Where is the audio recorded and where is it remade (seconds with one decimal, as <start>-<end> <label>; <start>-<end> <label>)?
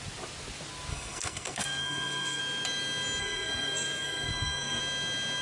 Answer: 0.0-0.9 recorded; 0.9-2.4 remade; 2.4-3.2 recorded; 3.2-4.8 remade; 4.8-5.4 recorded